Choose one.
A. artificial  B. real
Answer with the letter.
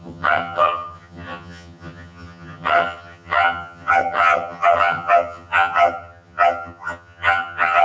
A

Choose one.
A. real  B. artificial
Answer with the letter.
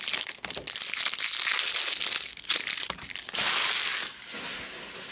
A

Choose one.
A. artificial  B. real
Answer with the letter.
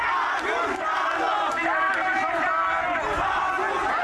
B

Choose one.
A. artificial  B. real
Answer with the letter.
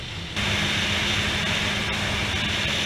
B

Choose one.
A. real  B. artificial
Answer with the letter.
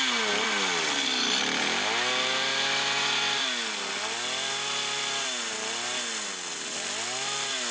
A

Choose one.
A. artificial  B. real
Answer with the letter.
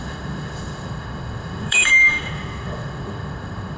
A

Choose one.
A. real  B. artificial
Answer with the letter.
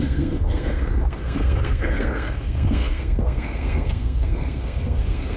B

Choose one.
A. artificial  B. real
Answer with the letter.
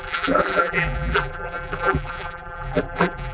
A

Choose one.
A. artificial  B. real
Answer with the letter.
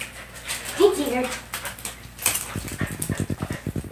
B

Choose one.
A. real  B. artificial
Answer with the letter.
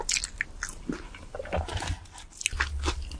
A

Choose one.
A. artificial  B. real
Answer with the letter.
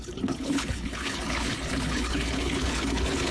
A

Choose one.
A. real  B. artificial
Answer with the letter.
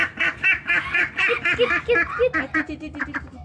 A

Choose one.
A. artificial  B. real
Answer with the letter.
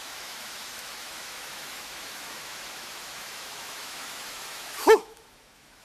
A